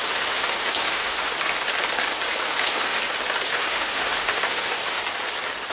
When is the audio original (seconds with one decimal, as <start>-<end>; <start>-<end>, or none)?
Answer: 1.3-2.4; 3.0-3.5; 5.0-5.7